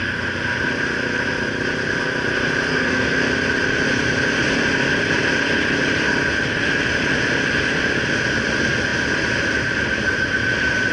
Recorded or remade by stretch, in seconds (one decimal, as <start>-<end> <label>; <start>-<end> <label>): 0.0-2.7 recorded; 2.7-3.3 remade; 3.3-10.9 recorded